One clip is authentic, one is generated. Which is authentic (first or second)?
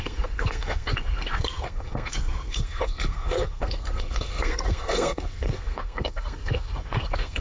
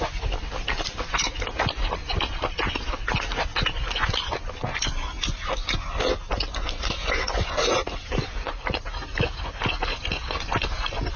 second